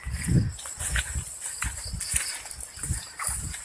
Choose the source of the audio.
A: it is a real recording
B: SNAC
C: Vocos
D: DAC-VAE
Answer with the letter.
A